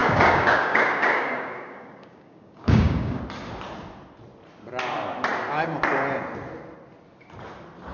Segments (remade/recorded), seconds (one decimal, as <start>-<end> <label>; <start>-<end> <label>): 0.0-3.2 remade; 3.2-7.9 recorded

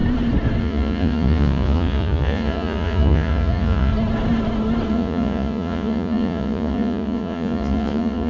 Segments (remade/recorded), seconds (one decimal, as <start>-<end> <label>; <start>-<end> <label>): 0.0-0.6 recorded; 0.6-3.9 remade; 3.9-4.9 recorded; 4.9-8.3 remade

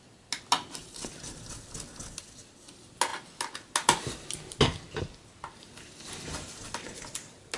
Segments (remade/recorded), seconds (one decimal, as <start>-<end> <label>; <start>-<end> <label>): 0.0-7.6 recorded